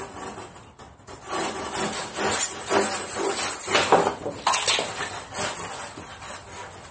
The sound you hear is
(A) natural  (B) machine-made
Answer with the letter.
A